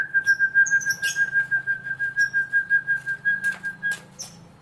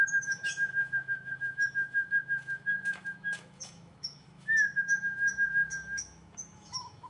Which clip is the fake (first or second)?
second